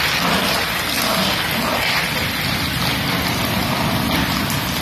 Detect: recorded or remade recorded